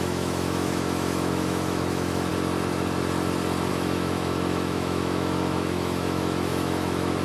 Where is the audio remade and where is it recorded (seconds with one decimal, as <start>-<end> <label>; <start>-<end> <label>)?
0.0-2.3 remade; 2.3-3.7 recorded; 3.7-7.2 remade